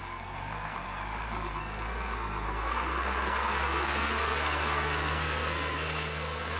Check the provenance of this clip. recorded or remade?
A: remade